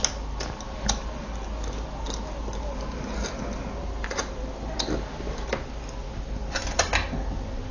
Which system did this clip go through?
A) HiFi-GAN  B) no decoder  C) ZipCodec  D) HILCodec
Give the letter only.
B